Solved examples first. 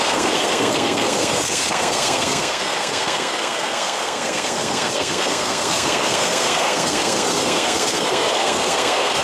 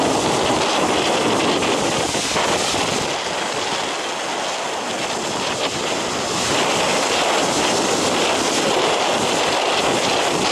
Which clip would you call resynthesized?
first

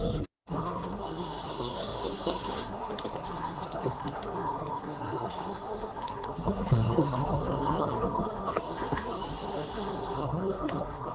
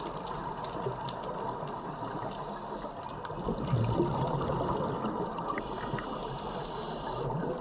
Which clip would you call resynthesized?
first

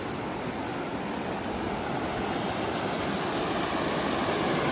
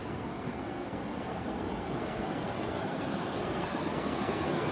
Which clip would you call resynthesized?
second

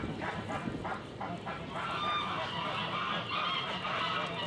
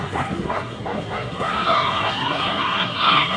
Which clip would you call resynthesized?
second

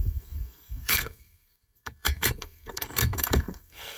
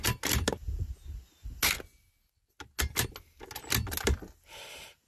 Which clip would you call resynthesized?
first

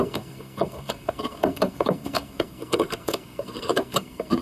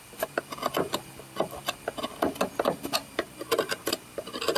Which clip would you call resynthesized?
first